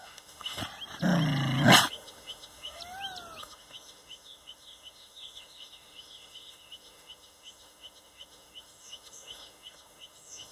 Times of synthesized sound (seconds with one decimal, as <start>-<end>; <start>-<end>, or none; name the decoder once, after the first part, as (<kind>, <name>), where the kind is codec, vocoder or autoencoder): 0.0-0.6 (autoencoder, DAC-VAE); 1.9-2.8; 3.4-10.5